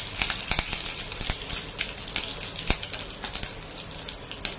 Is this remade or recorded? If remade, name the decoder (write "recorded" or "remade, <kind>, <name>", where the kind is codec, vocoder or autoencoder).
recorded